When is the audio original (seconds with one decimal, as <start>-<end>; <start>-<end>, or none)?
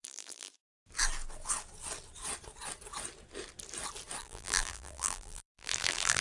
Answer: 0.5-4.2